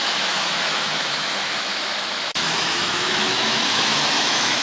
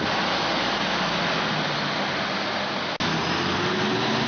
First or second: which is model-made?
first